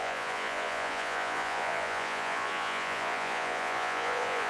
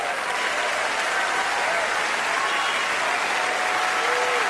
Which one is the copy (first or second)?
first